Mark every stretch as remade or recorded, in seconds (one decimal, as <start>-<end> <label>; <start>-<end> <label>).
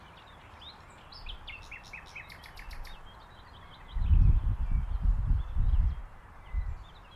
0.0-6.0 recorded; 6.0-7.2 remade